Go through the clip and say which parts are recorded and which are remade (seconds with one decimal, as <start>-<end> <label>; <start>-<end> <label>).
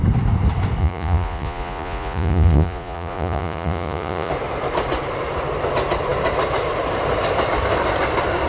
0.0-0.8 recorded; 0.8-4.3 remade; 4.3-8.5 recorded